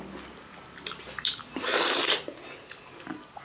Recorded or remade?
recorded